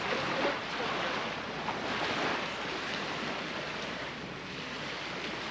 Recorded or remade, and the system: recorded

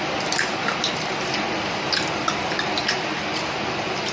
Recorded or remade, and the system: recorded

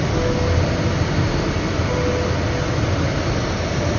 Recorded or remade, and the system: recorded